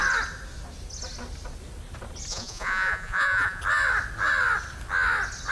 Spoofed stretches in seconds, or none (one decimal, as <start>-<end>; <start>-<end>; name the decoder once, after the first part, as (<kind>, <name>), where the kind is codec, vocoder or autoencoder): 2.3-3.6 (vocoder, Vocos)